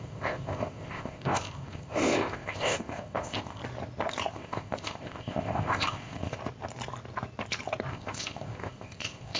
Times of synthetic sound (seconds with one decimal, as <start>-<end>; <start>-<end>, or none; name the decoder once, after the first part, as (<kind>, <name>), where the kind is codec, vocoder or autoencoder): 0.0-3.6 (codec, ZipCodec); 4.3-6.4; 7.9-9.4

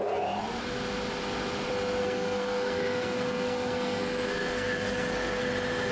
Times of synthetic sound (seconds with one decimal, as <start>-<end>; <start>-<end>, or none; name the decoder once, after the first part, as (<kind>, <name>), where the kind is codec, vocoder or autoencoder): 2.0-5.5 (codec, SNAC)

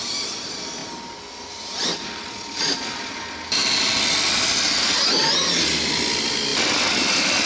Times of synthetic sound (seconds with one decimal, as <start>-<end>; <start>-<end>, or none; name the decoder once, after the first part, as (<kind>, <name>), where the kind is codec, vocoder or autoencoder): 0.0-0.8 (vocoder, BigVGAN v2); 1.5-3.6; 5.9-7.5

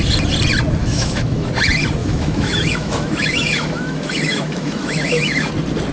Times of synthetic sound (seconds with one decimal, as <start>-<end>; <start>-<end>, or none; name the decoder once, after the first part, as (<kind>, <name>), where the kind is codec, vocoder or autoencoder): 0.8-1.5 (autoencoder, DAC-VAE); 2.0-5.5